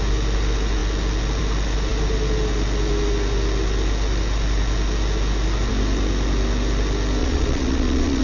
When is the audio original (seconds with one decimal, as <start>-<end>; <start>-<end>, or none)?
0.0-7.2